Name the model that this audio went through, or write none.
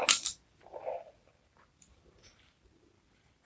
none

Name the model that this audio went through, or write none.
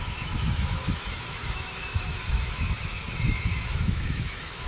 autoencoder, DAC-VAE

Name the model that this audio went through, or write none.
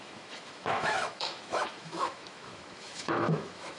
autoencoder, DAC-VAE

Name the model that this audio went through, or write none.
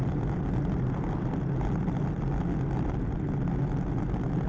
none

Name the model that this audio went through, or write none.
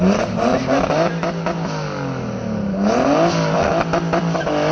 none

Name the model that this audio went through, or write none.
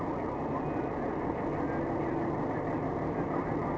none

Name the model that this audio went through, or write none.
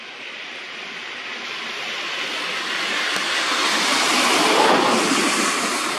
none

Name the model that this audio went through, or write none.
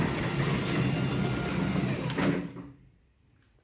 none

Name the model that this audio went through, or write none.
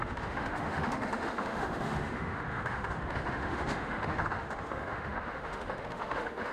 autoencoder, DAC-VAE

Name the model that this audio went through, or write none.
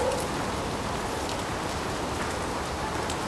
none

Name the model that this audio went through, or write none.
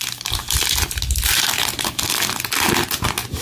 none